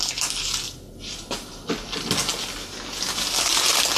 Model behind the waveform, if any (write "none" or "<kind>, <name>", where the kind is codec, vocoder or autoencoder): none